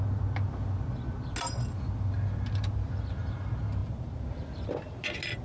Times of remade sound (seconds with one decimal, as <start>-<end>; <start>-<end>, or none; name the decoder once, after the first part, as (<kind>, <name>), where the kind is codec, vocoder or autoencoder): none